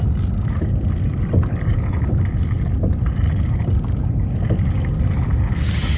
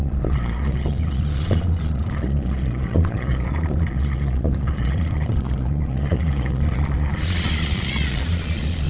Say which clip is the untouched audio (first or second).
first